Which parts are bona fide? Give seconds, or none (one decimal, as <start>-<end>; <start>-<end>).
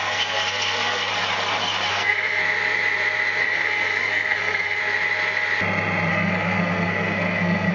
1.1-1.9; 2.4-3.4; 4.8-6.1